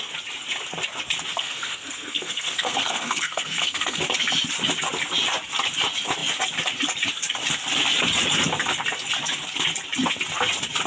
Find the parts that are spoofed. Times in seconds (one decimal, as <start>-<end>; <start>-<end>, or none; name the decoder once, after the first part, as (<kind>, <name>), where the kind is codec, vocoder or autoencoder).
1.3-4.0 (codec, SNAC)